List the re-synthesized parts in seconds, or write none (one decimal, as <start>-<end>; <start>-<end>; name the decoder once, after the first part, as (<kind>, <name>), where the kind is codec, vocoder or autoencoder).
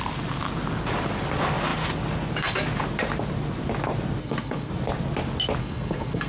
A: 4.2-4.7 (codec, SNAC); 5.6-6.3